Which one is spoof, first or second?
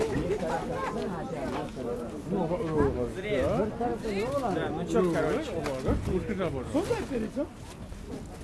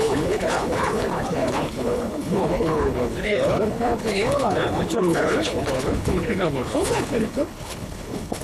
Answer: second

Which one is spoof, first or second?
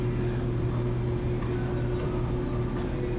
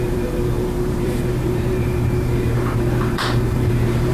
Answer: second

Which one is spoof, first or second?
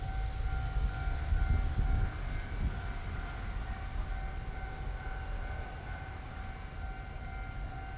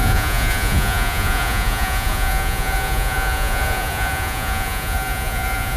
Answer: second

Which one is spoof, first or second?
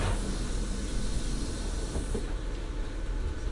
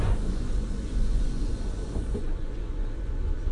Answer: second